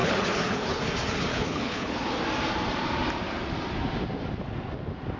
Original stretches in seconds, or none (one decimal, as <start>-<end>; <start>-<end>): 0.8-1.3; 2.1-5.2